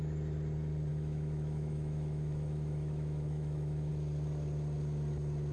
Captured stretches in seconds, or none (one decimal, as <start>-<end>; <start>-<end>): 0.0-0.9; 3.9-5.5